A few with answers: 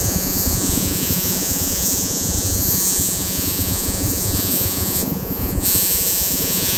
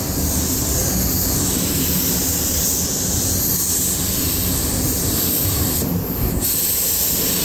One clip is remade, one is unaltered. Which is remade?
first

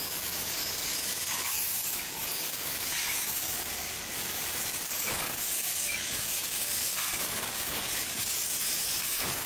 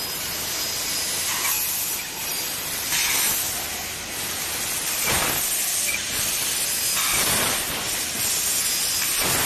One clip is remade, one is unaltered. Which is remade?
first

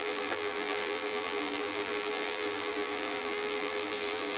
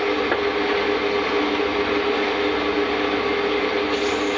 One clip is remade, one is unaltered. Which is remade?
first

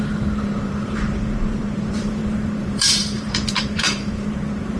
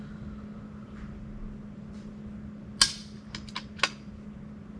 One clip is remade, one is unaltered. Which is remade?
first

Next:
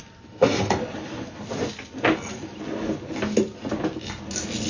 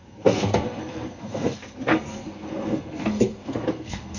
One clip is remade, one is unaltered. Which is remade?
second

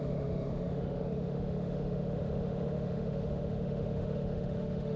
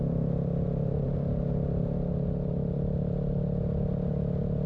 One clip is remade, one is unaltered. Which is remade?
first